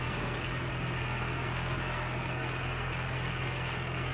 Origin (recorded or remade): remade